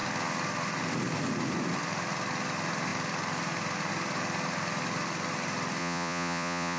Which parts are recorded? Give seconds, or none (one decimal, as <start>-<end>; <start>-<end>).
0.0-5.8